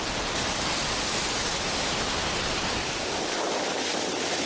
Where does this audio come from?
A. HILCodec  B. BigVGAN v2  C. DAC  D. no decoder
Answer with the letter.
D